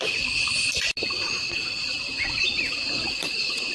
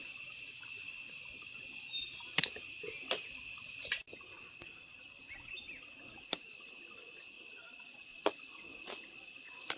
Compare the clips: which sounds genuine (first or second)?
second